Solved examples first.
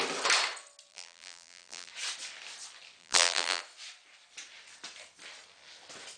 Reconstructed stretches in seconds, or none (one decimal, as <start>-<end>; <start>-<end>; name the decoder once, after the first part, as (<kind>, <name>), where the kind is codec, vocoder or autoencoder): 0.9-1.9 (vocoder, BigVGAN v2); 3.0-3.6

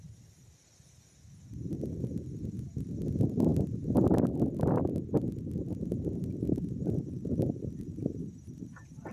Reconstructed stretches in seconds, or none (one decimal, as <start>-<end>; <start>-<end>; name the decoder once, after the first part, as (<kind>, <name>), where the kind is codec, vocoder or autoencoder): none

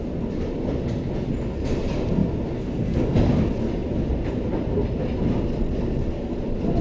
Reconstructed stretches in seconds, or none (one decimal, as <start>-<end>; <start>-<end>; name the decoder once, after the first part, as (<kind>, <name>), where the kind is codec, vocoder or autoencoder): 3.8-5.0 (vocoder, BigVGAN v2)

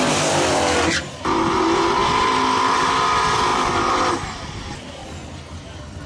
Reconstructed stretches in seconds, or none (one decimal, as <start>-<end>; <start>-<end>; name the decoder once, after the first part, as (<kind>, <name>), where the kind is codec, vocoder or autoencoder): 0.0-5.0 (vocoder, BigVGAN v2)

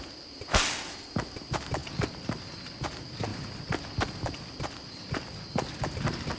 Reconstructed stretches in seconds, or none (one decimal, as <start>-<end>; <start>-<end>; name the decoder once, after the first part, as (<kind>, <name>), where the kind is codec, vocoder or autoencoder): none